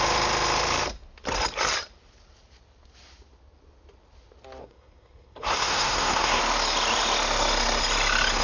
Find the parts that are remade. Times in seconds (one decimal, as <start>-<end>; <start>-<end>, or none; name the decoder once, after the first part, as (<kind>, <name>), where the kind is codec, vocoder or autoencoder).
4.6-6.4 (codec, SNAC)